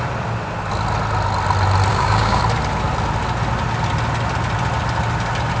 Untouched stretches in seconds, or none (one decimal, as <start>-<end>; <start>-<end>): 0.0-1.9; 2.4-5.6